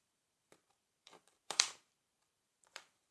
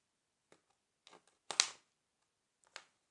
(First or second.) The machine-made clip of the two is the first